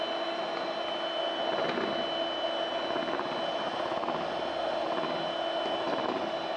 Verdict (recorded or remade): recorded